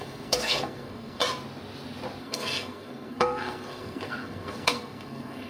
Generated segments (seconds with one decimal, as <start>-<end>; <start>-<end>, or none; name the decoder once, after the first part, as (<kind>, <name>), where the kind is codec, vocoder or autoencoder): 0.0-1.2 (codec, SNAC); 2.2-5.5